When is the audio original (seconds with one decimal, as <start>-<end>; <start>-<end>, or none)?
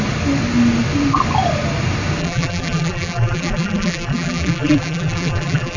0.0-2.2